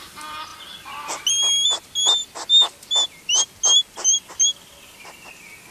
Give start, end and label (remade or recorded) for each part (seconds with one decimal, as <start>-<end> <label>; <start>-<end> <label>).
0.0-5.7 recorded